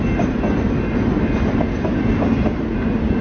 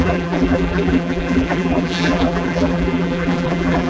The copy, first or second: second